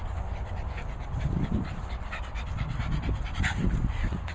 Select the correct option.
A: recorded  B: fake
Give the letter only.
A